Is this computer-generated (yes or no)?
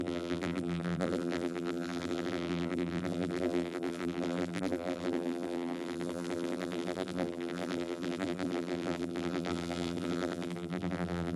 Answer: yes